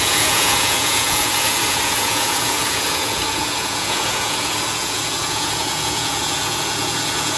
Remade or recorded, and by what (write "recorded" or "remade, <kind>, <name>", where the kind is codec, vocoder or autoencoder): remade, vocoder, Vocos